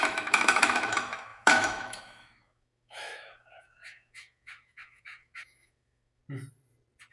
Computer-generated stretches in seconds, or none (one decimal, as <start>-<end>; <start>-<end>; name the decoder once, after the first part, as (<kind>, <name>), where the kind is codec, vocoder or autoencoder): 0.0-6.2 (autoencoder, DAC-VAE)